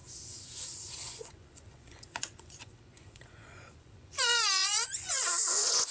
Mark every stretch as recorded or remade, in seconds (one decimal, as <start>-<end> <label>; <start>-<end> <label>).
0.0-5.9 remade